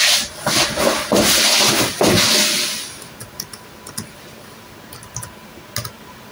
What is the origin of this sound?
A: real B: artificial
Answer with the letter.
A